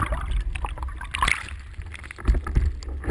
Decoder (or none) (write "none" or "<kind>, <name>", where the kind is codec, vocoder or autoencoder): none